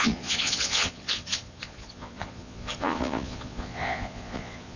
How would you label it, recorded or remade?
remade